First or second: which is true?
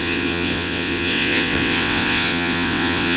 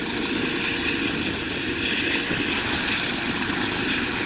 second